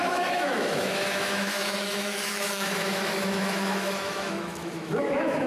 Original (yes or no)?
no